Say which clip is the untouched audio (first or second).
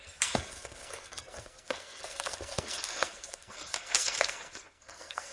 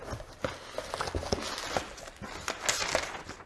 second